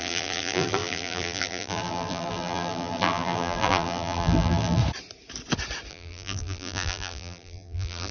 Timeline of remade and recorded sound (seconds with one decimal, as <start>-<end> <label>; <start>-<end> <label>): 0.0-4.8 remade; 4.8-5.9 recorded; 5.9-8.1 remade